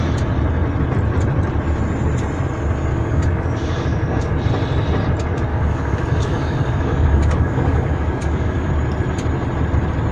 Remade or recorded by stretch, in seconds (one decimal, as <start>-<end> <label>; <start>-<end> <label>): 0.0-2.9 recorded; 2.9-4.3 remade; 4.3-5.5 recorded; 5.5-8.7 remade; 8.7-10.1 recorded